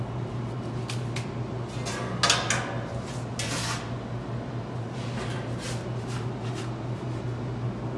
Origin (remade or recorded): recorded